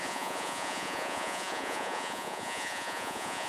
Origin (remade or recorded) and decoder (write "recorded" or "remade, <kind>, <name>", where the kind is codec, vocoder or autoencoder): remade, vocoder, Vocos